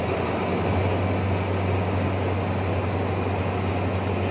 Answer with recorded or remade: recorded